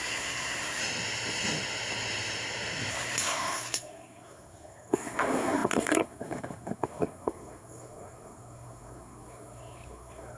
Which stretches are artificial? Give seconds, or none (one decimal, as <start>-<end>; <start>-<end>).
0.0-0.8; 2.9-10.4